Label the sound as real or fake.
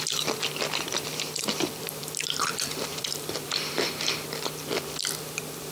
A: fake